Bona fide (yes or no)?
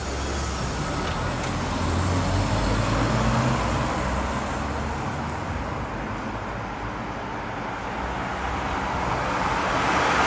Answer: yes